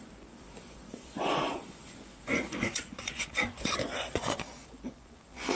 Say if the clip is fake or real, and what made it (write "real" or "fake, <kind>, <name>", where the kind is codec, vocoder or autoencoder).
fake, vocoder, Vocos